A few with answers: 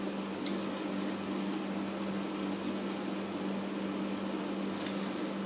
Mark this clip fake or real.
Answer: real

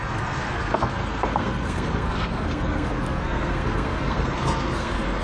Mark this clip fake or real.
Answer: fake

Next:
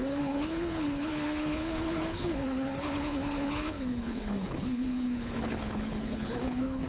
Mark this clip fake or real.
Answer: fake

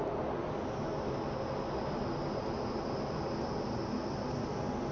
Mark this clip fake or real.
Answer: real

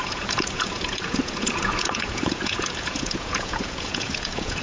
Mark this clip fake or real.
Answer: fake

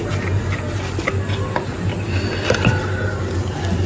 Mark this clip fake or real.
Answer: real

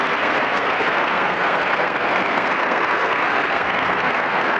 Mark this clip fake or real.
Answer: fake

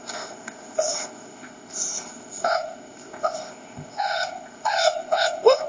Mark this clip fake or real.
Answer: fake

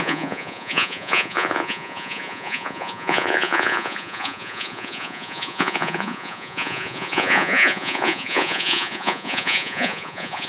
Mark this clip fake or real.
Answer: fake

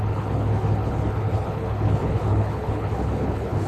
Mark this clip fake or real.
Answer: fake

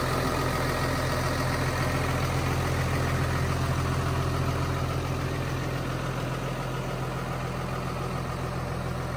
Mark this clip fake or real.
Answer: real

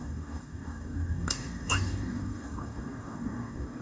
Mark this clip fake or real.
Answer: fake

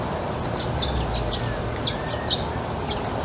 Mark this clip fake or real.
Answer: real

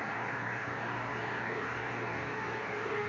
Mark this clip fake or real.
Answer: fake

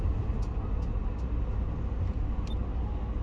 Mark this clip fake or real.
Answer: real